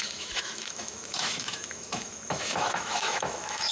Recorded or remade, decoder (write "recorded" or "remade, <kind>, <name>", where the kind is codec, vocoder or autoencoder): remade, autoencoder, DAC-VAE